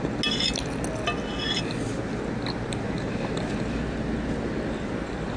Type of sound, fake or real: real